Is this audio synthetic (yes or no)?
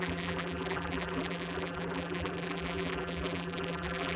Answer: yes